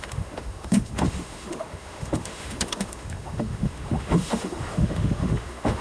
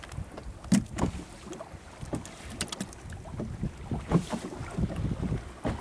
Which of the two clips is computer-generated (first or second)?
first